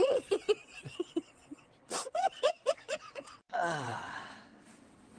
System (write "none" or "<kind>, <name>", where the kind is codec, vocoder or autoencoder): vocoder, WaveNeXt